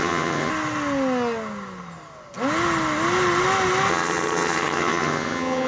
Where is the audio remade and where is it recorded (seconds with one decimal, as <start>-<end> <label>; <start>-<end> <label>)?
0.0-0.5 remade; 0.5-3.9 recorded; 3.9-5.7 remade